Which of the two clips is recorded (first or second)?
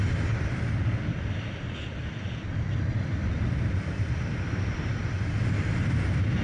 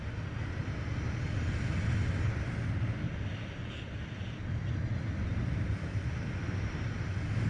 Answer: second